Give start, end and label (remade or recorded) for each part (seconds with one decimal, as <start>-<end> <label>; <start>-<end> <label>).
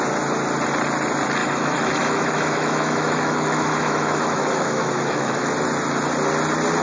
0.0-1.4 recorded; 1.4-5.5 remade; 5.5-6.8 recorded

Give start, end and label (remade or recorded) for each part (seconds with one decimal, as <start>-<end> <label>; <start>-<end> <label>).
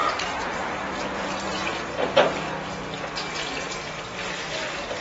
0.0-5.0 recorded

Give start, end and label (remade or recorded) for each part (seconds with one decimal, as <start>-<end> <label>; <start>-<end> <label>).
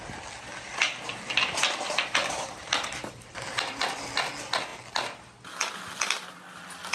0.0-2.6 recorded; 2.6-4.3 remade; 4.3-6.9 recorded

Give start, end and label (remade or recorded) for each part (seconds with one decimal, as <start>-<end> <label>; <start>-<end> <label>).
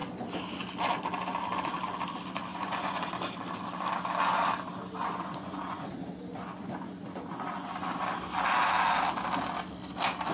0.0-2.5 recorded; 2.5-3.1 remade; 3.1-5.0 recorded; 5.0-5.9 remade; 5.9-6.6 recorded; 6.6-7.7 remade; 7.7-10.3 recorded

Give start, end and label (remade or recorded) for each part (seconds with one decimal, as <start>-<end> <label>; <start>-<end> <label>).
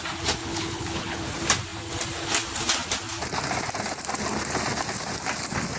0.0-0.4 recorded; 0.4-1.2 remade; 1.2-5.8 recorded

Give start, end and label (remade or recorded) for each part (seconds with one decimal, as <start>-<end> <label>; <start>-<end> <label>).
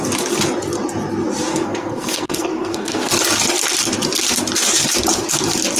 0.0-1.5 recorded; 1.5-3.1 remade; 3.1-5.8 recorded